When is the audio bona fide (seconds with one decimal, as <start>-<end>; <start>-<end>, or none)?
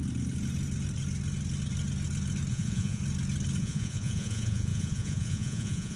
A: 0.0-2.5; 3.0-3.6